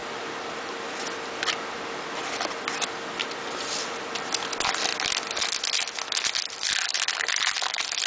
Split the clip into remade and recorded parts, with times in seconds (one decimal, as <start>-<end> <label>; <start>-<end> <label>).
0.0-8.1 recorded